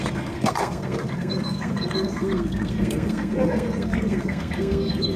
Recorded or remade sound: remade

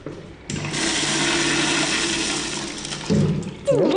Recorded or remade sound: recorded